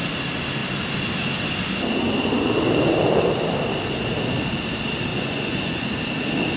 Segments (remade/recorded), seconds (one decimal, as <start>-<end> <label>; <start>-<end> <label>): 0.0-5.1 recorded; 5.1-5.9 remade; 5.9-6.6 recorded